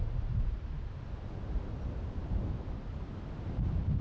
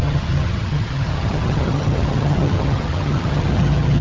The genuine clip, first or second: first